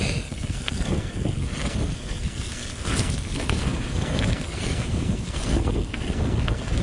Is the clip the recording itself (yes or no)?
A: no